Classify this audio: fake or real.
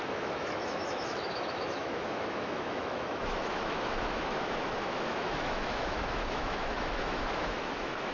fake